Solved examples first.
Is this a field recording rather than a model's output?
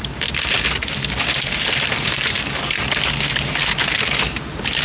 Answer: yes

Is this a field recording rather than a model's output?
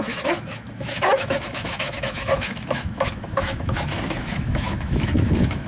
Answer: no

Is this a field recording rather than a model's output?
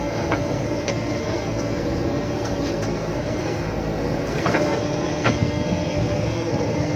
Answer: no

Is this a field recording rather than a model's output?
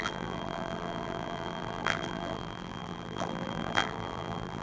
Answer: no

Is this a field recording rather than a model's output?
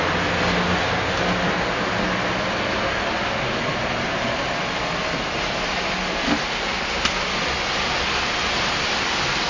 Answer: yes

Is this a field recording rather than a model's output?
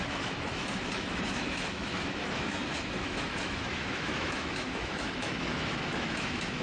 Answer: no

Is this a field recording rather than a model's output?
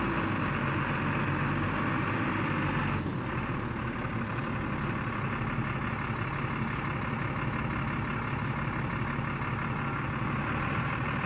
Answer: yes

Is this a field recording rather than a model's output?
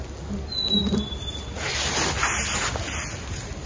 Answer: yes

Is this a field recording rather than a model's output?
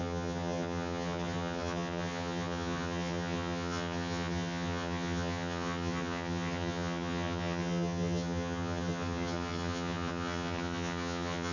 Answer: no